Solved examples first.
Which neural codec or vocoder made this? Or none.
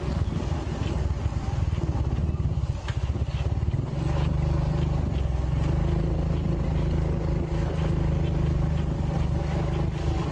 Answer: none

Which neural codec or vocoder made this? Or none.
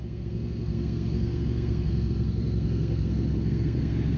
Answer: codec, SNAC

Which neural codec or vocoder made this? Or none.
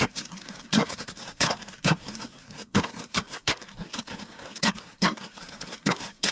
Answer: codec, SNAC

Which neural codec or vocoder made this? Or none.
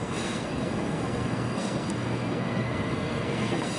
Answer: codec, SNAC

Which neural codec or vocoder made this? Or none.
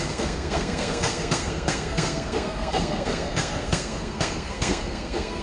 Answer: codec, SNAC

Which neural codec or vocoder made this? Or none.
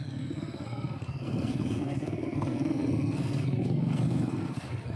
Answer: codec, SNAC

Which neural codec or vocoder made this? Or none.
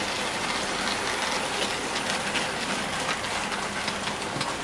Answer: none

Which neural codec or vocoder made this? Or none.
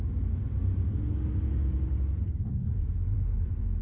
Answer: none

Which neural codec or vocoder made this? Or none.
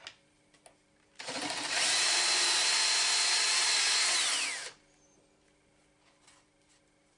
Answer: none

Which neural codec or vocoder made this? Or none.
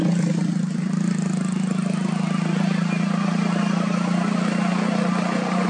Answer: none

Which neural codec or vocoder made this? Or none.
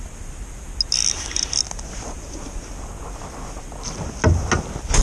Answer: none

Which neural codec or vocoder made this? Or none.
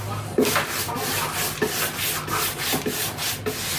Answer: none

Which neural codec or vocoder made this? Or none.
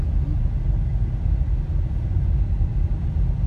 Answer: none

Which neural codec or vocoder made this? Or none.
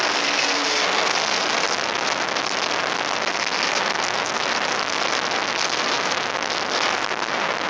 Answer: none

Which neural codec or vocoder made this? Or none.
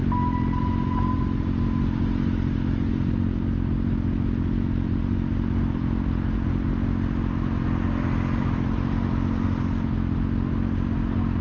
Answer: none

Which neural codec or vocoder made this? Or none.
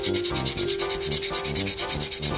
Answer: none